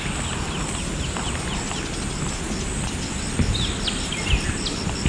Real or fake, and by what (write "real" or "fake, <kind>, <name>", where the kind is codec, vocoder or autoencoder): real